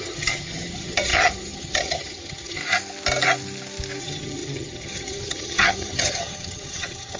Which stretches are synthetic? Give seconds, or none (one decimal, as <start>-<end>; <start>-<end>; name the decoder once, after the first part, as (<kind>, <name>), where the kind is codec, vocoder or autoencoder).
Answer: 0.0-2.6 (vocoder, HiFi-GAN); 4.0-7.2